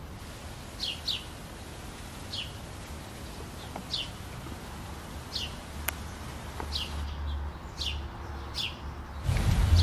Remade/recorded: recorded